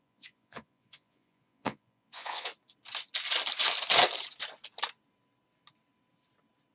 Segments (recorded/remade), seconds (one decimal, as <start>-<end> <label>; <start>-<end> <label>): 0.0-2.5 remade; 2.5-6.7 recorded